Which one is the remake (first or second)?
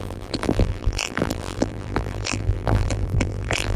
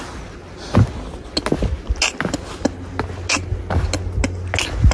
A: first